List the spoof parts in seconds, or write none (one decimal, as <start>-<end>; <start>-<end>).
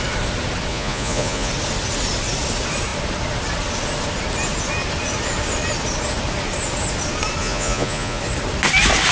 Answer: 0.7-1.5; 7.4-8.2